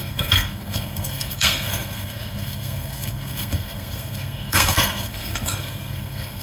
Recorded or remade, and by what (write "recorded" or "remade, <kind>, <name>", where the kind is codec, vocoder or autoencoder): remade, codec, SNAC